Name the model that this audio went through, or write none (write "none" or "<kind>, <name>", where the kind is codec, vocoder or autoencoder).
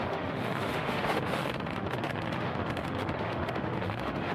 autoencoder, DAC-VAE